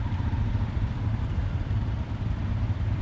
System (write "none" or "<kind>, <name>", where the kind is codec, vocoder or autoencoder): vocoder, BigVGAN v2